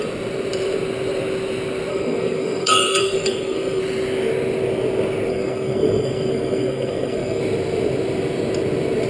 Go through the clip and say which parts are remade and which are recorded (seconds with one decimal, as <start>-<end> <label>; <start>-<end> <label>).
0.0-1.9 recorded; 1.9-3.8 remade; 3.8-5.3 recorded; 5.3-7.4 remade; 7.4-9.1 recorded